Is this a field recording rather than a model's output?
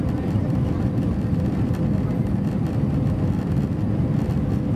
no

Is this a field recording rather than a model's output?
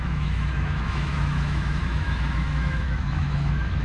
no